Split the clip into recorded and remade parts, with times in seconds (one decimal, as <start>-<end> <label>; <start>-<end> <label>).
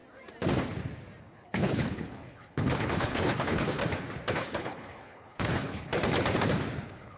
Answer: 0.0-1.2 recorded; 1.2-3.8 remade; 3.8-4.3 recorded; 4.3-5.9 remade; 5.9-6.8 recorded; 6.8-7.2 remade